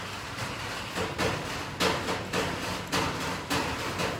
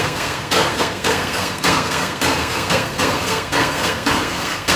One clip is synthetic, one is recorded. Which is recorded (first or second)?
first